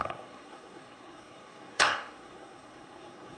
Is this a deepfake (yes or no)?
yes